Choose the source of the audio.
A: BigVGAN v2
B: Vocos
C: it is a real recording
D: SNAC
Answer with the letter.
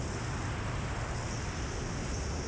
C